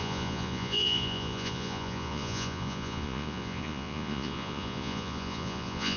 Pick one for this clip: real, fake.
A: fake